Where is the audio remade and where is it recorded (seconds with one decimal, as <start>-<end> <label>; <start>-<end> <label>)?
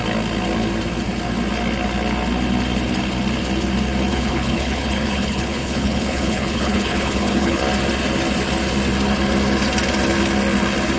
0.0-4.1 recorded; 4.1-7.6 remade; 7.6-11.0 recorded